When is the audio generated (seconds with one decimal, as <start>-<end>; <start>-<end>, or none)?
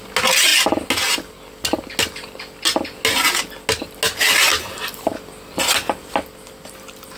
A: none